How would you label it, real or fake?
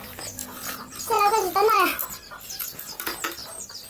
real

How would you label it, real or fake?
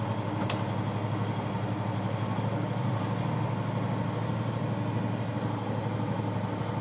real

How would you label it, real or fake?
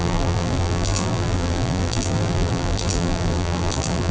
fake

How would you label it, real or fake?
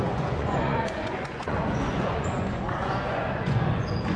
fake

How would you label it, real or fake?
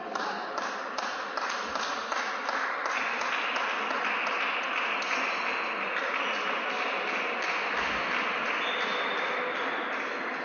real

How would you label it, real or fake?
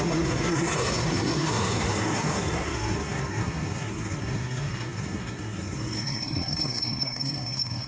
fake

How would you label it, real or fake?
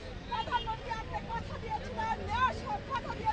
real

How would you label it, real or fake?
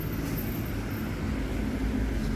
real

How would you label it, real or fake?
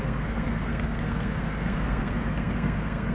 fake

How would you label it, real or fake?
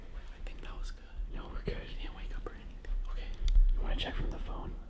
real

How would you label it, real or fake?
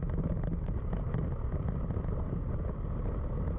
real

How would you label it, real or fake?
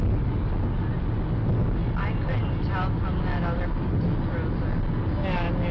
real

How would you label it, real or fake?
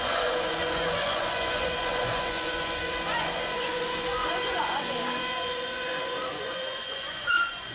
fake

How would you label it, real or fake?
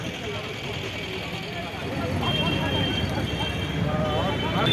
real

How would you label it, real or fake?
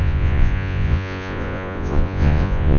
fake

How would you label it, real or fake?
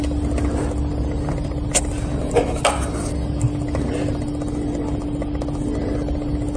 real